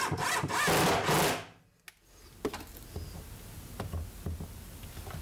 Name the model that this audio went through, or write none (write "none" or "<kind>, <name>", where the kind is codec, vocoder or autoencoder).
none